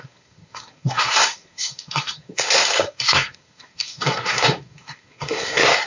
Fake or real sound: fake